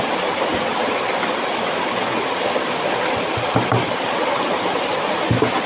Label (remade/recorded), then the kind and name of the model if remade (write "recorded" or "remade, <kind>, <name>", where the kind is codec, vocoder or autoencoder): recorded